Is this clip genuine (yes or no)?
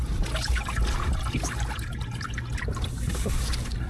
yes